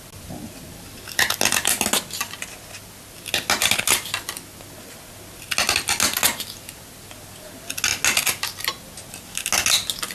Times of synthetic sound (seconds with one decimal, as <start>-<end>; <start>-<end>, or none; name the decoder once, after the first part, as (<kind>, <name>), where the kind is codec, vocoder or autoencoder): none